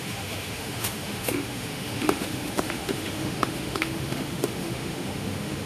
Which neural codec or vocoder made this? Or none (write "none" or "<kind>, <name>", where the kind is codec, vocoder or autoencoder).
autoencoder, DAC-VAE